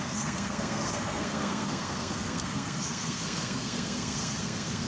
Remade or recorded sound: remade